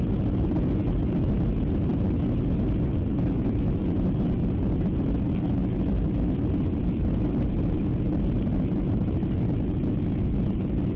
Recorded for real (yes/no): yes